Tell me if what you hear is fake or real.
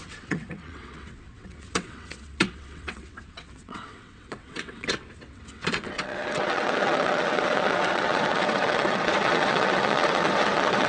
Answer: fake